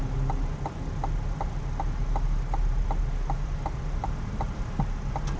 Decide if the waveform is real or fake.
real